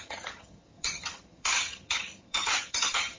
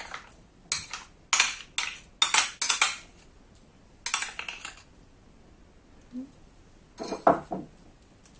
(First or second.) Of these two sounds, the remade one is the first